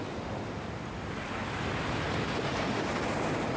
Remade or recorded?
recorded